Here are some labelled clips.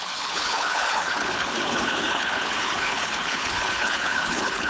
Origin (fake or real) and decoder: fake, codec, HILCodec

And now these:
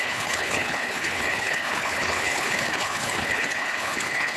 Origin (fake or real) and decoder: fake, codec, HILCodec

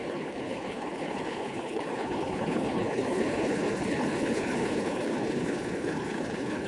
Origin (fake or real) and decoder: fake, codec, HILCodec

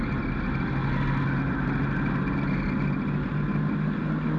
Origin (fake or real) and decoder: real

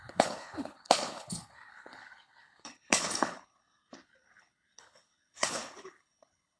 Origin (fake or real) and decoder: fake, codec, HILCodec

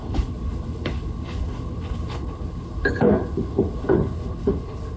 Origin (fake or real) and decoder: fake, codec, HILCodec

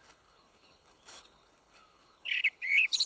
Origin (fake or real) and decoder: fake, codec, HILCodec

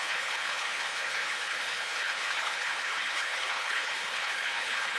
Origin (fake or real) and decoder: fake, codec, HILCodec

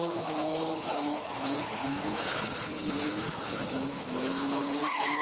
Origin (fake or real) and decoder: fake, codec, HILCodec